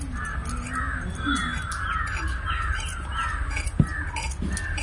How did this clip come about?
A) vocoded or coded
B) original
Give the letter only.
B